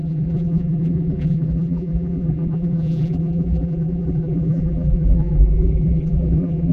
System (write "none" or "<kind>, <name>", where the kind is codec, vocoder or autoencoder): vocoder, BigVGAN v2